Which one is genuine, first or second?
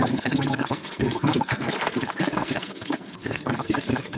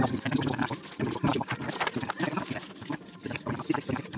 second